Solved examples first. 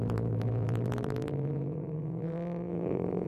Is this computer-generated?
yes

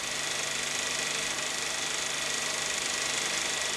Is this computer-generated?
no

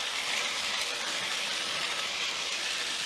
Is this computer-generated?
yes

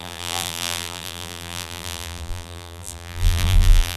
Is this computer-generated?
yes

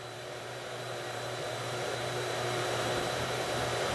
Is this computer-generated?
yes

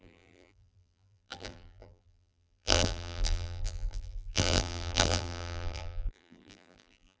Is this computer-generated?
yes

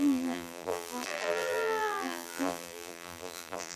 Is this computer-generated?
yes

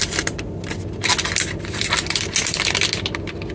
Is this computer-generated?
no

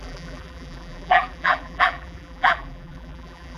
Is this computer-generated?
yes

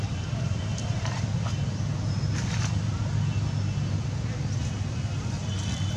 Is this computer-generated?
no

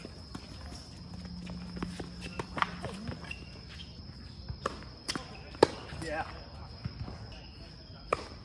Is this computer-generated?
no